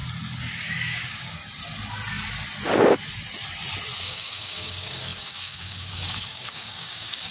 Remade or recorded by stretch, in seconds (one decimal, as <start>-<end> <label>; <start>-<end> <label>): 0.0-0.6 recorded; 0.6-1.4 remade; 1.4-4.0 recorded; 4.0-7.3 remade